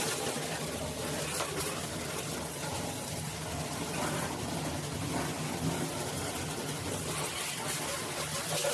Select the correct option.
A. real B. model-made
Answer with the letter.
A